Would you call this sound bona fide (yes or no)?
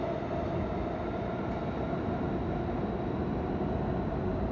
yes